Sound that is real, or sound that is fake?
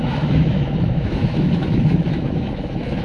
fake